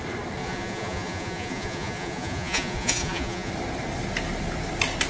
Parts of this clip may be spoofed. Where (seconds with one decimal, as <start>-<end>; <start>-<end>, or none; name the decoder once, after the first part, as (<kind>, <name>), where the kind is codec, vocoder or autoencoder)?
0.4-3.5 (vocoder, Vocos)